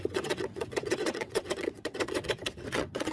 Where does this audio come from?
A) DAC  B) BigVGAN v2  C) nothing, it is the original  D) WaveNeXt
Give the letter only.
D